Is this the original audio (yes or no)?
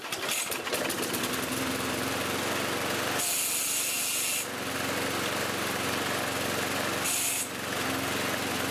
yes